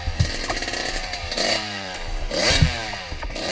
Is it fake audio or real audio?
fake